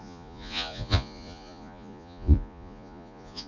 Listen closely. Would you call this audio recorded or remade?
remade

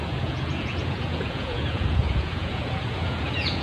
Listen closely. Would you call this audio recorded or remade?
remade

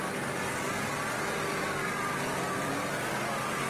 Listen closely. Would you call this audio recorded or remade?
recorded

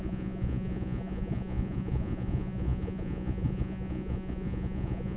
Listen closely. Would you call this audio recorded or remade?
remade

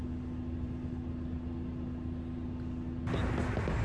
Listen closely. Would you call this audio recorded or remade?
recorded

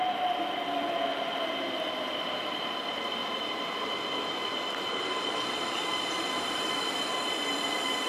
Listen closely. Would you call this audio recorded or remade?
recorded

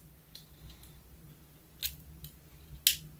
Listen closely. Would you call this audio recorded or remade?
recorded